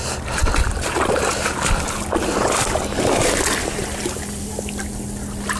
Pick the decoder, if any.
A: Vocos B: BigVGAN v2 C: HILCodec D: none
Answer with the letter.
D